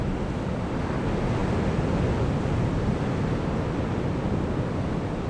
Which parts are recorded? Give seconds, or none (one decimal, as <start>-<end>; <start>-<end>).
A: 0.0-5.3